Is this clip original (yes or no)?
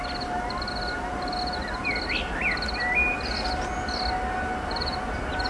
yes